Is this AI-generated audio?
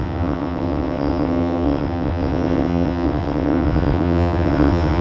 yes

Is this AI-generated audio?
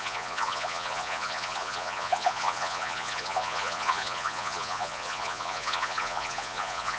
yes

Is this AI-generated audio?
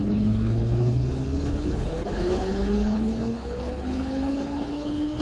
yes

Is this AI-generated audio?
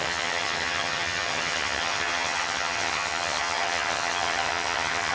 yes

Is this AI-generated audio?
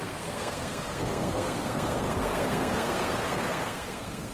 yes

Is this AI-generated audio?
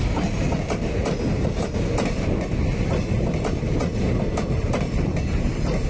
no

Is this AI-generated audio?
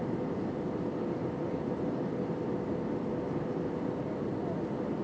no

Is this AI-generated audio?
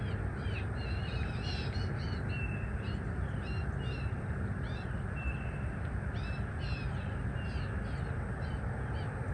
no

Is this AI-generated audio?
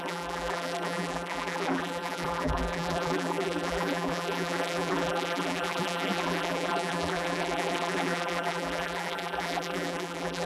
yes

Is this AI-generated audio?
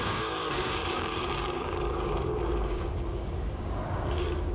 yes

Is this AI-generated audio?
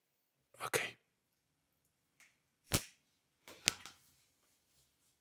no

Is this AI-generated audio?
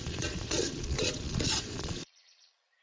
yes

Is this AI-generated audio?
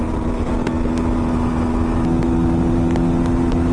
no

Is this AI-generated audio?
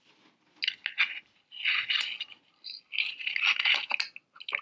no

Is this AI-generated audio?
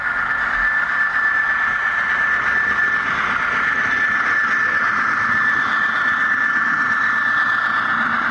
no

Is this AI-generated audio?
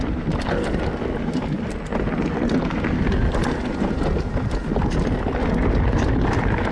no